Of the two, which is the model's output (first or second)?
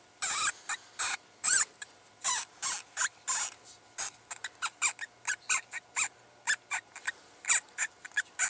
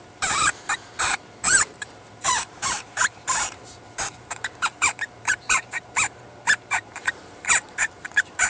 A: second